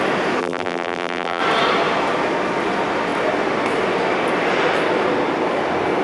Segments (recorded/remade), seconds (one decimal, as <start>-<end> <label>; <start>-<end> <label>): 0.0-0.4 recorded; 0.4-1.4 remade; 1.4-6.0 recorded